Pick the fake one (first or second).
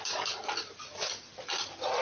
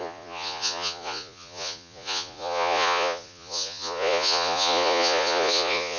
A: second